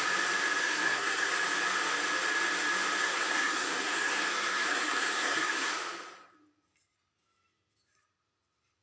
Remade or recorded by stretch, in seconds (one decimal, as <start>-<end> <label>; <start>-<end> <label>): 0.0-0.6 recorded; 0.6-1.3 remade; 1.3-3.0 recorded; 3.0-5.7 remade; 5.7-8.8 recorded